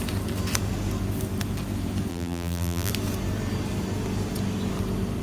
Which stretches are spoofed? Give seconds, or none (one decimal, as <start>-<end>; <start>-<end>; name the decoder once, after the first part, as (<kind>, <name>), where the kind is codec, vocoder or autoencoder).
2.1-2.9 (vocoder, BigVGAN v2)